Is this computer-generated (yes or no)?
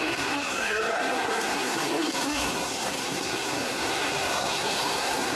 yes